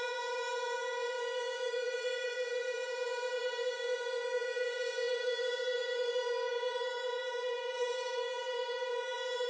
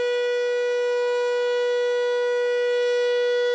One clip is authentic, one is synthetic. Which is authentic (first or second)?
second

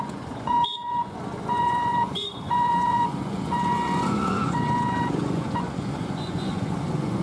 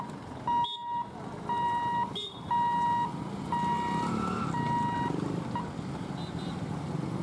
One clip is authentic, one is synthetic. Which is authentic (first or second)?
second